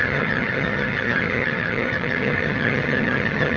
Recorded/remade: remade